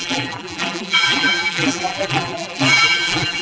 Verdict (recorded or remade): remade